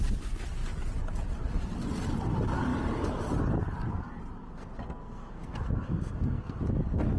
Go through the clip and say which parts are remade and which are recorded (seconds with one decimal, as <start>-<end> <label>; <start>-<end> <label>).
0.0-4.4 recorded; 4.4-6.6 remade; 6.6-7.2 recorded